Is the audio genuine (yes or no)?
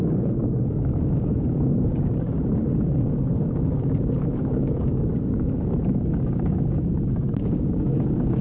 no